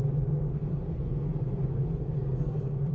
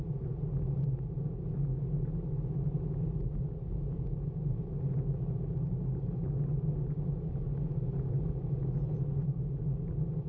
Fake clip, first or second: first